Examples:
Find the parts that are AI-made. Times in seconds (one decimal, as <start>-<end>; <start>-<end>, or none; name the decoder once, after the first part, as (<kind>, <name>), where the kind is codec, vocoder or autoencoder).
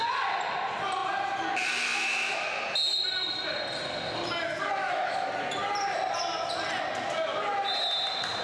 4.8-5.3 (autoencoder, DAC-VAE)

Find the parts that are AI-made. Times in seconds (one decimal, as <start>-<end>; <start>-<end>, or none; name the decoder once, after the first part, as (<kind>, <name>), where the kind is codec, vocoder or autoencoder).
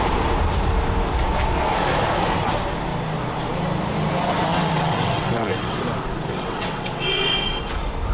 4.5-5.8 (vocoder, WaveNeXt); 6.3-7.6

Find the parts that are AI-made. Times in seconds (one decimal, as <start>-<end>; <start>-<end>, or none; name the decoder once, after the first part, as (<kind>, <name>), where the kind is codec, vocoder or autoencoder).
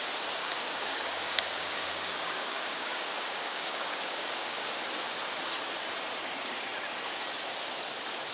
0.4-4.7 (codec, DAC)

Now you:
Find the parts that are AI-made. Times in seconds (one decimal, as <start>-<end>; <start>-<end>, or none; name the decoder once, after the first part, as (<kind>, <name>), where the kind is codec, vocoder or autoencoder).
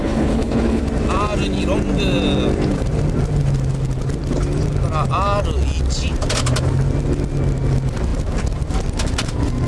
0.0-0.8 (codec, HILCodec)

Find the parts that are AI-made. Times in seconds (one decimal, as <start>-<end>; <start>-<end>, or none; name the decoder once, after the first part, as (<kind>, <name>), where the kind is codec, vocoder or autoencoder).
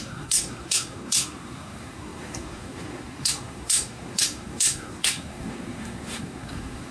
0.0-6.9 (codec, SNAC)